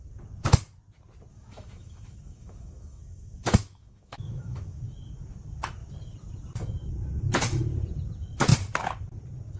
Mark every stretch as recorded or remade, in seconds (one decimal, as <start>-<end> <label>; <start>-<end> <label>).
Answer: 0.0-1.3 recorded; 1.3-4.8 remade; 4.8-9.6 recorded